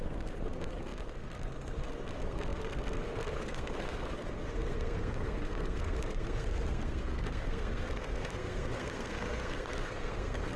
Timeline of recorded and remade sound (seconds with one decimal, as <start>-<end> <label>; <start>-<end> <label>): 0.0-10.6 remade